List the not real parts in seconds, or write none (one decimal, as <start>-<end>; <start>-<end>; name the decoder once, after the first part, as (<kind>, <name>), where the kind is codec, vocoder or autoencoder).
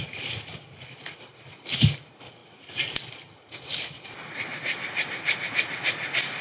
none